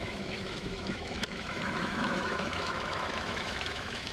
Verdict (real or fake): fake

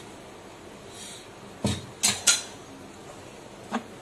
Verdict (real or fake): real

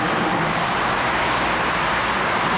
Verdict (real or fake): real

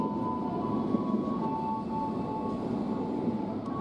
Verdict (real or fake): real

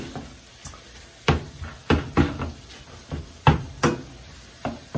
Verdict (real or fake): real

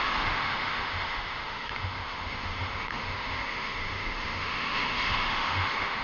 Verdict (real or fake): fake